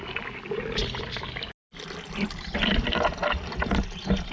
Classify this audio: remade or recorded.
recorded